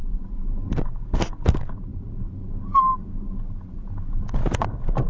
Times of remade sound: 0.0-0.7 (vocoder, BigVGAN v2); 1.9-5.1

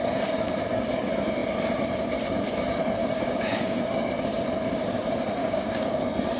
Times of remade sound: 3.0-3.8 (codec, DAC); 5.4-6.0

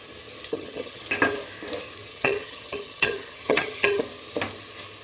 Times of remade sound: 0.5-1.0 (vocoder, HiFi-GAN); 2.1-4.0